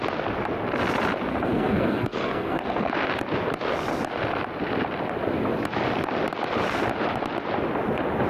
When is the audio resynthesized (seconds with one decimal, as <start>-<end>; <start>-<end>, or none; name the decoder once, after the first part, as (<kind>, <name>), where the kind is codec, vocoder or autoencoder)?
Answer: 1.3-2.9 (codec, SNAC)

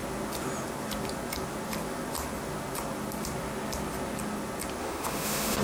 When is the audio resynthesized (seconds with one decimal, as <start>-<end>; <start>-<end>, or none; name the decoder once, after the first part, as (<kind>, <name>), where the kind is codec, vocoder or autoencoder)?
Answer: 4.8-5.6 (autoencoder, DAC-VAE)

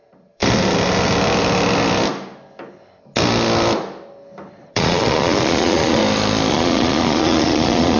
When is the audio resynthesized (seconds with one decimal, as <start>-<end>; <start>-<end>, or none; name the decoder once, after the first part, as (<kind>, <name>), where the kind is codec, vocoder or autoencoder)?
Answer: 0.0-0.4 (vocoder, Vocos); 4.5-6.0; 6.5-8.0